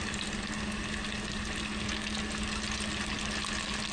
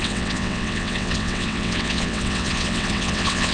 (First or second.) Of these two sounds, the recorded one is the first